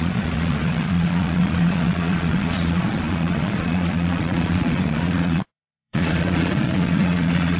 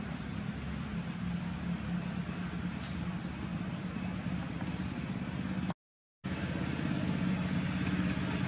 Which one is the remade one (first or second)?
first